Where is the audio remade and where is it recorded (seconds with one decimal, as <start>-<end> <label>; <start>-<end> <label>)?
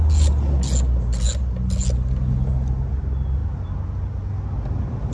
0.0-5.1 recorded